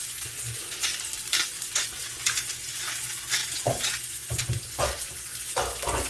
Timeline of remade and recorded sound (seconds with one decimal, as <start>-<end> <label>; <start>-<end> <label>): 0.0-0.9 remade; 0.9-1.6 recorded; 1.6-6.1 remade